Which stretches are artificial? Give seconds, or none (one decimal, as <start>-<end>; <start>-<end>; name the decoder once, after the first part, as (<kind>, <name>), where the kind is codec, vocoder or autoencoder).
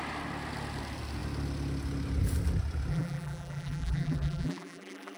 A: 2.9-5.2 (vocoder, BigVGAN v2)